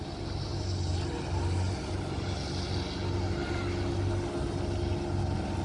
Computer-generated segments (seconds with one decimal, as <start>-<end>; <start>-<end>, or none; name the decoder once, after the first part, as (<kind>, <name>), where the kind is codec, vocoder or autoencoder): none